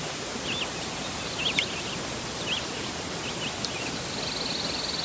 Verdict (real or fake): real